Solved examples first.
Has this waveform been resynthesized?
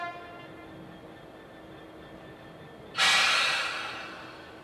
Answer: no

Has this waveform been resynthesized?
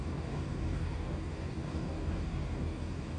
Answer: yes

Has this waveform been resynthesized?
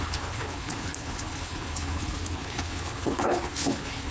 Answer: yes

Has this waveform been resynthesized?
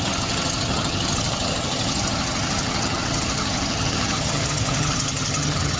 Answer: yes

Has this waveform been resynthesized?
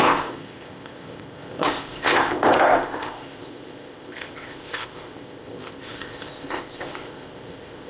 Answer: yes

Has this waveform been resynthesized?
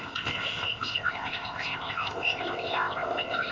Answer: yes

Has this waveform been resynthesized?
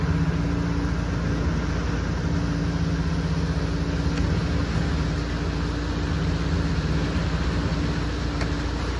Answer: no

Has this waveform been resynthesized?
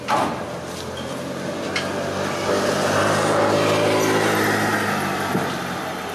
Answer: no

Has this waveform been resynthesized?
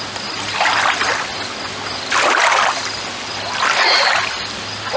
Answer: no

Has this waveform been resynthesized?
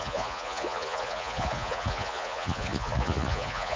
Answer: yes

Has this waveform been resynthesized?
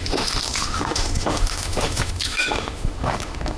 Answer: yes